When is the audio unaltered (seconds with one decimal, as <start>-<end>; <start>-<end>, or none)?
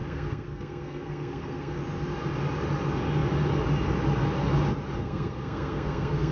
1.8-5.0